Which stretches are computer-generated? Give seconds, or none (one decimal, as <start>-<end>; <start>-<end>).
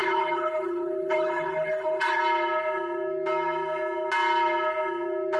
0.0-2.2